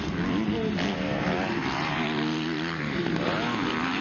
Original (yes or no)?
yes